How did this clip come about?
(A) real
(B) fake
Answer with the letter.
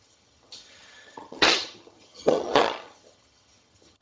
B